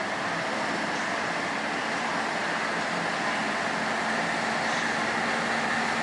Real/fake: real